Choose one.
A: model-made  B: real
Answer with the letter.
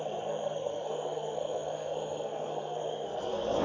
A